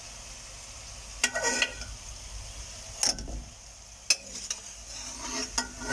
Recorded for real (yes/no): yes